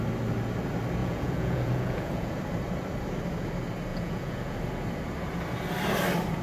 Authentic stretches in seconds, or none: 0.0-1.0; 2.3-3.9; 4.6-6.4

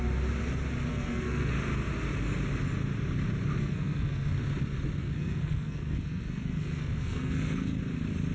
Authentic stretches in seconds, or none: 0.0-0.9; 1.5-3.6; 4.3-5.0; 7.8-8.3

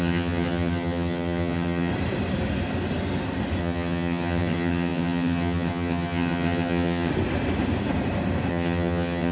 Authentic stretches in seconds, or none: 1.9-3.6; 7.1-8.5